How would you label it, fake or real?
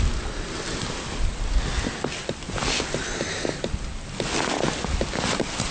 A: real